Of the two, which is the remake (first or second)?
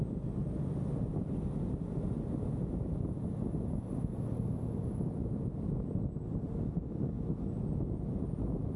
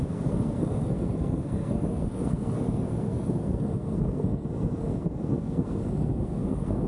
second